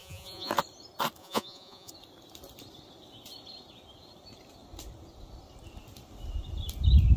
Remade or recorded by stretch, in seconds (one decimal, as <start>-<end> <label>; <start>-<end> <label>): 0.0-0.5 remade; 0.5-1.2 recorded; 1.2-1.9 remade; 1.9-7.2 recorded